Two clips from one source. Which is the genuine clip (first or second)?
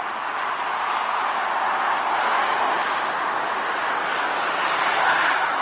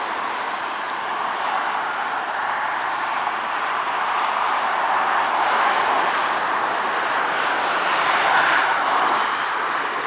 first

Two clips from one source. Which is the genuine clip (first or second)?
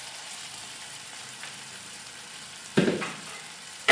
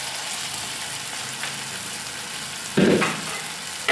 second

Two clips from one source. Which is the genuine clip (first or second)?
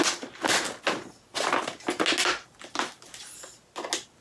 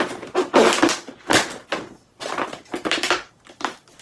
first